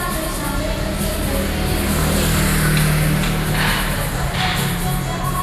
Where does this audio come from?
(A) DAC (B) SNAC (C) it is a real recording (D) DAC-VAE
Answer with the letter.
C